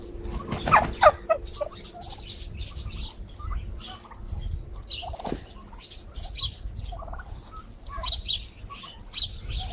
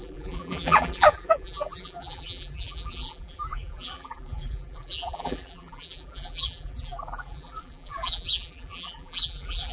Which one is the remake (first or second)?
second